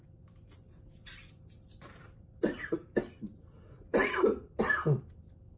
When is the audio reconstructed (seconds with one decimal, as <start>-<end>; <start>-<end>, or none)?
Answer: none